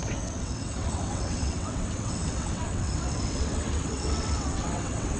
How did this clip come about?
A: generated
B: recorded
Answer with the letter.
A